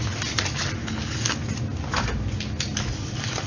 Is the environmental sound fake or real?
real